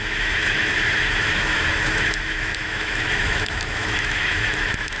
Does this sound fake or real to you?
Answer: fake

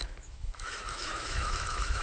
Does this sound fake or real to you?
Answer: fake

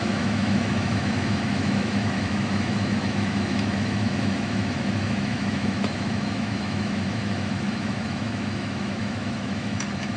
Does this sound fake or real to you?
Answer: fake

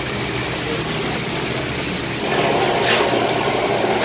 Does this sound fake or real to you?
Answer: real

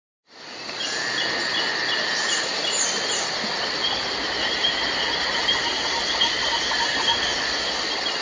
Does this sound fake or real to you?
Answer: real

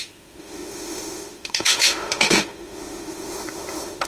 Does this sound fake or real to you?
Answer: fake